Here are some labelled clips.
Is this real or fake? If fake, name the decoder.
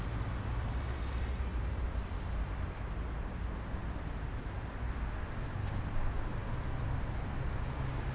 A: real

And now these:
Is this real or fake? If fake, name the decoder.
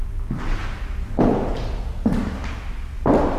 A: real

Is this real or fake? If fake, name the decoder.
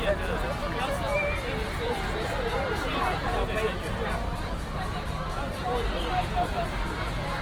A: real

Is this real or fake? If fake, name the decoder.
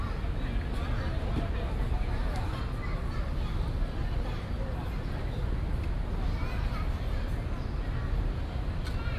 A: real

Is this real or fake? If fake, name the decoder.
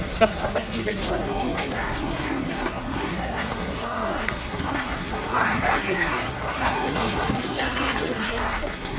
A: fake, codec, SNAC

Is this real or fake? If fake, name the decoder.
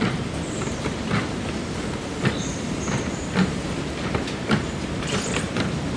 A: real